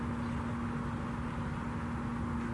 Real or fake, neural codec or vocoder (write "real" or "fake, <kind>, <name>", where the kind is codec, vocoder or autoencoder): real